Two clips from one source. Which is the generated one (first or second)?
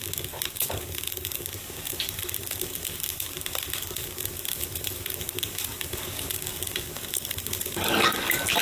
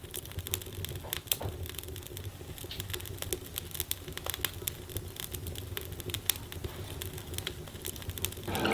first